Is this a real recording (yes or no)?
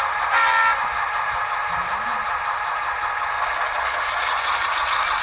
yes